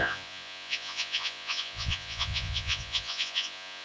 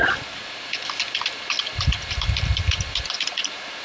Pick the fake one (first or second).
first